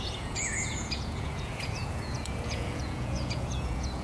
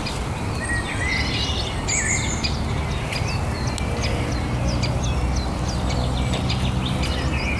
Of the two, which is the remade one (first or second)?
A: first